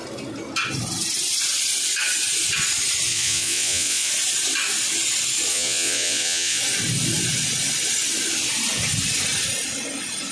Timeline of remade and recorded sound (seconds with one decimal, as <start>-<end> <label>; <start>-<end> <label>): 0.0-3.1 recorded; 3.1-4.1 remade; 4.1-5.5 recorded; 5.5-6.6 remade; 6.6-10.3 recorded